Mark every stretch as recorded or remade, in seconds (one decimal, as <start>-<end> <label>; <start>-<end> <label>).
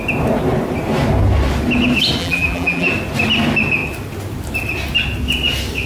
0.0-2.2 recorded; 2.2-2.9 remade; 2.9-5.9 recorded